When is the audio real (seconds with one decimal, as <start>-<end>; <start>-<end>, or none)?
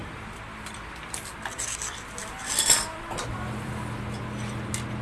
1.6-2.2; 3.7-5.0